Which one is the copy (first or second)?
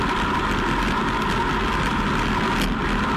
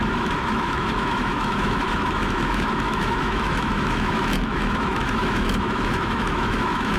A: second